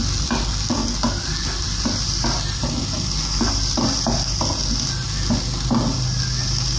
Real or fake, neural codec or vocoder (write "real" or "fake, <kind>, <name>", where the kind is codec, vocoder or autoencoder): real